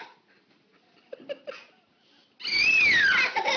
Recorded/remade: recorded